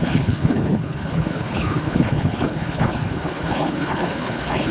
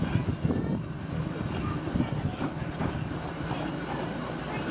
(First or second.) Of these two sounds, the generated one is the first